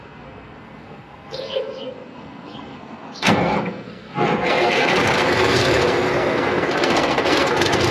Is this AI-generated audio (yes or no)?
yes